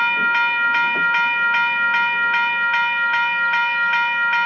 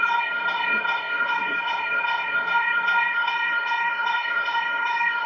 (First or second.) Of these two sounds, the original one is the first